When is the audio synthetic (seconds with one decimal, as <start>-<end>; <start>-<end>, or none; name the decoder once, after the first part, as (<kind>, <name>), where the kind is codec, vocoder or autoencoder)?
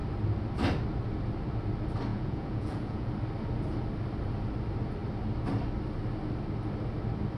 2.1-3.1 (vocoder, Vocos)